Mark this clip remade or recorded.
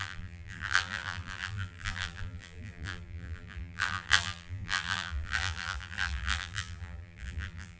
remade